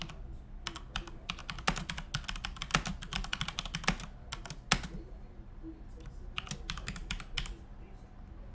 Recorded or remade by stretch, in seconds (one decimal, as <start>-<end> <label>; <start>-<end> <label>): 0.0-8.5 recorded

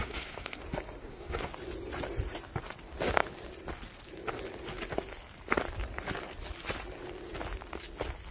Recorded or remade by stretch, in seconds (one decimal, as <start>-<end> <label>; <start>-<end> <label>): 0.0-0.6 remade; 0.6-1.0 recorded; 1.0-1.5 remade; 1.5-8.3 recorded

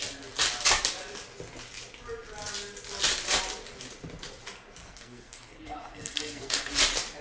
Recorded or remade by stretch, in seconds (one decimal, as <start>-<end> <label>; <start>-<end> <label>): 0.0-4.8 recorded; 4.8-6.7 remade; 6.7-7.2 recorded

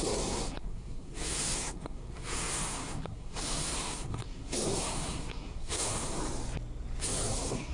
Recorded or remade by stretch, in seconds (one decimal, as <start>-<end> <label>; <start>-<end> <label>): 0.0-6.2 remade; 6.2-7.0 recorded; 7.0-7.7 remade

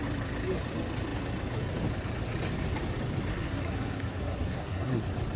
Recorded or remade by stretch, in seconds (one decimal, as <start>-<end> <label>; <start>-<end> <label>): 0.0-3.3 recorded; 3.3-5.0 remade; 5.0-5.4 recorded

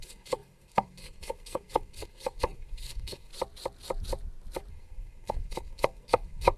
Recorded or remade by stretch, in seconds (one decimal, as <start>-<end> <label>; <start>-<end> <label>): 0.0-3.3 remade; 3.3-4.7 recorded; 4.7-6.6 remade

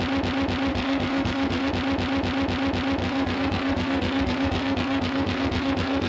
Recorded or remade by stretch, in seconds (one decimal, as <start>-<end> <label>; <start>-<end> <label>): 0.0-0.7 recorded; 0.7-1.7 remade; 1.7-3.0 recorded; 3.0-6.1 remade

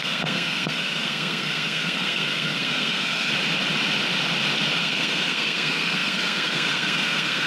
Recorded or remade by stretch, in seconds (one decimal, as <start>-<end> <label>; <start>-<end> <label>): 0.0-3.3 remade; 3.3-4.8 recorded; 4.8-7.5 remade